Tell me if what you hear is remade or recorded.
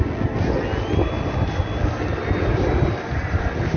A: recorded